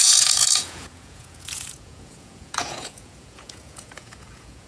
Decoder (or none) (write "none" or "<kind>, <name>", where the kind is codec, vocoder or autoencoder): vocoder, Vocos